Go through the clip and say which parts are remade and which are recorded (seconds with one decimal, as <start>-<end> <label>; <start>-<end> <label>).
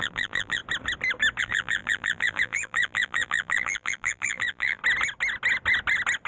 0.0-0.6 remade; 0.6-1.4 recorded; 1.4-4.8 remade; 4.8-6.3 recorded